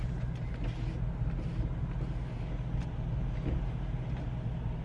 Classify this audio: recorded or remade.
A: recorded